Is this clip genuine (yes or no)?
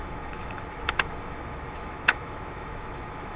no